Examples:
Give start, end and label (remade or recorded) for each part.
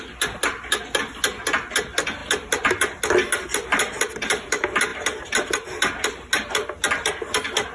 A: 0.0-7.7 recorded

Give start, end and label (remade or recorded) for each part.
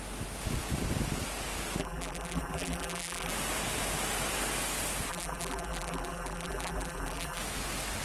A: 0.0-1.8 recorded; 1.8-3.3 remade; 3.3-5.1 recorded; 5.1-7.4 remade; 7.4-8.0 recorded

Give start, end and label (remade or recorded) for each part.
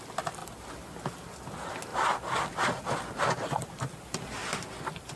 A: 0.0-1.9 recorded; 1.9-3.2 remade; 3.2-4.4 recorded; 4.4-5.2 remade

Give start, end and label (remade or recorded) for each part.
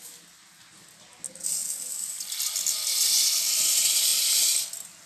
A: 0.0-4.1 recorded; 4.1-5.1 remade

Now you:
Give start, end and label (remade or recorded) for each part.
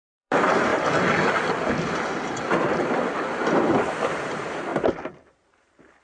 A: 0.0-0.7 remade; 0.7-3.5 recorded; 3.5-6.0 remade